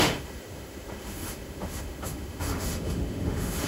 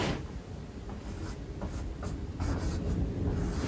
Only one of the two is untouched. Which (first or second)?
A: second